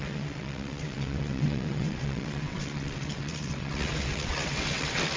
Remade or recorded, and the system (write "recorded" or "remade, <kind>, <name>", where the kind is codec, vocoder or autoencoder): remade, vocoder, WaveNeXt